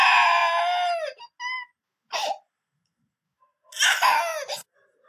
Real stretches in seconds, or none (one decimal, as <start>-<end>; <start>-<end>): 0.0-5.1